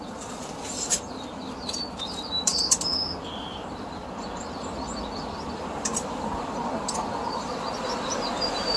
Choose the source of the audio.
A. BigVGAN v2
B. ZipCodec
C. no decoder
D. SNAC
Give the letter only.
C